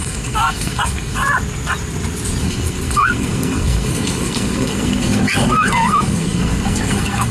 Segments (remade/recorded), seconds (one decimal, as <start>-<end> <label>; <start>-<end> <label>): 0.0-1.2 remade; 1.2-2.4 recorded; 2.4-7.3 remade